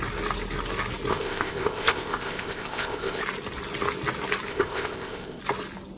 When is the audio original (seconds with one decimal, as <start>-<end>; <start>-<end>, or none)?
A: 0.0-1.1; 3.2-4.5; 5.4-6.0